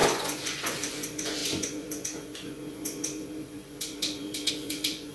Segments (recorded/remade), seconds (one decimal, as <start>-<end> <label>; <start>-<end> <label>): 0.0-5.1 remade